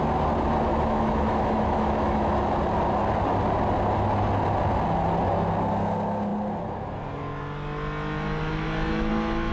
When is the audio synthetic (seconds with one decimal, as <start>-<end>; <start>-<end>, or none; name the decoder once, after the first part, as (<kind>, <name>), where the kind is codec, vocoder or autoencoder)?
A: 0.7-2.3 (autoencoder, DAC-VAE)